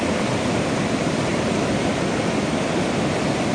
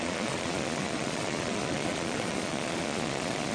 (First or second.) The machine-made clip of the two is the second